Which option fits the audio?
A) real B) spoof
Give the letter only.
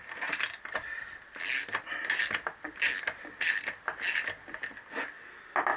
A